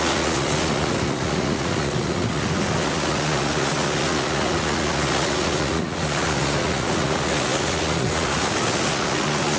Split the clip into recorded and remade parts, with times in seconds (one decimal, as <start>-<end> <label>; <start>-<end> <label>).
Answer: 0.0-9.6 remade